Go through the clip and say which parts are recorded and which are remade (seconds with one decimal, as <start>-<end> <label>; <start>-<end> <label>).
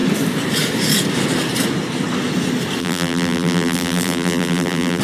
0.0-2.8 recorded; 2.8-5.0 remade